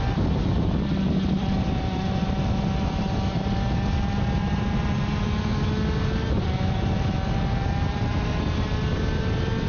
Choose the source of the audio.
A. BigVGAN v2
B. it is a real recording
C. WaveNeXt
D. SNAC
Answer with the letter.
B